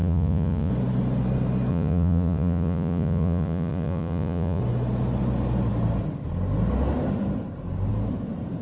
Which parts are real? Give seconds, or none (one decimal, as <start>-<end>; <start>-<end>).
0.7-1.7; 4.6-8.6